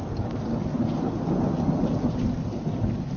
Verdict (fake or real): real